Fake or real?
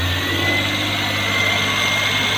real